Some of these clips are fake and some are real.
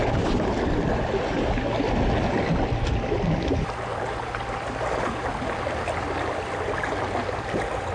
real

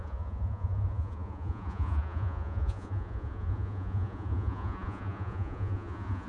fake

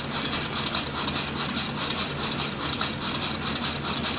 real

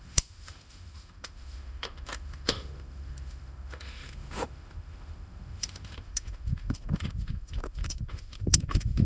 fake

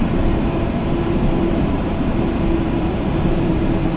fake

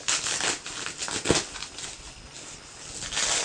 real